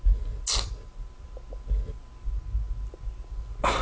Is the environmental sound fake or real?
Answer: real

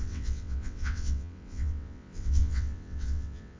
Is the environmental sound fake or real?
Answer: fake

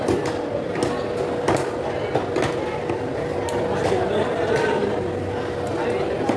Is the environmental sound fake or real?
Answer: real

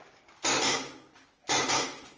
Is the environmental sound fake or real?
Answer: real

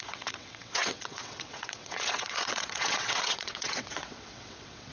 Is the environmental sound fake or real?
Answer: fake